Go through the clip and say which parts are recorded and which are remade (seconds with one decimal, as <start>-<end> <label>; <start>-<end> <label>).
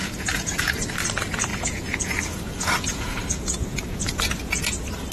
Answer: 0.0-0.8 remade; 0.8-1.5 recorded; 1.5-4.6 remade; 4.6-5.1 recorded